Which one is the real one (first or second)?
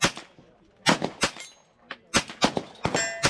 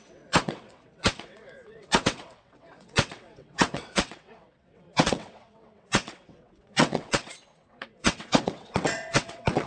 first